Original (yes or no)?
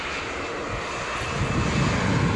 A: yes